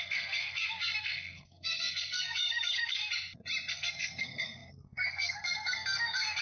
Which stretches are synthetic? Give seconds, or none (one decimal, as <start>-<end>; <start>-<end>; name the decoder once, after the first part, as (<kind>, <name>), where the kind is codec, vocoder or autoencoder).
0.0-3.0 (codec, SNAC); 3.7-6.4